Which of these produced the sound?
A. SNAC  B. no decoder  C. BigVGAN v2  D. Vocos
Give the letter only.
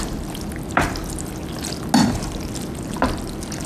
B